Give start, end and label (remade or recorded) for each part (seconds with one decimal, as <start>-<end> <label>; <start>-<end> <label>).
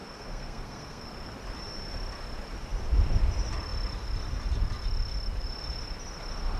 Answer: 0.0-1.1 remade; 1.1-6.6 recorded